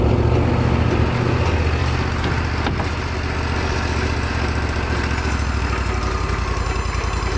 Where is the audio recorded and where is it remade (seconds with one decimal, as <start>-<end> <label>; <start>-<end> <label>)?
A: 0.0-7.4 recorded